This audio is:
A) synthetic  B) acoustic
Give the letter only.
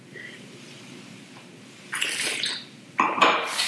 A